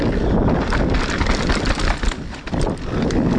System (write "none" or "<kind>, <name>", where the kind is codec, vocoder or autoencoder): none